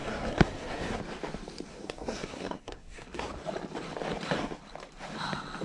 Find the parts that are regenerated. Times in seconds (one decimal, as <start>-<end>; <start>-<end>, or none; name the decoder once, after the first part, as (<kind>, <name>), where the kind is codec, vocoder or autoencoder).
0.0-1.0 (codec, SNAC); 1.7-3.3